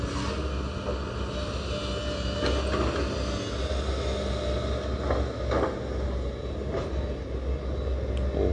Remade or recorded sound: recorded